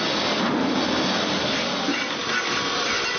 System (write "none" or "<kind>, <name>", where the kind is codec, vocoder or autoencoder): none